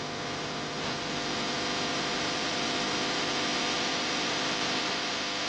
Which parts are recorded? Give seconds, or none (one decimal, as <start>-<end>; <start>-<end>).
0.0-1.9; 5.1-5.5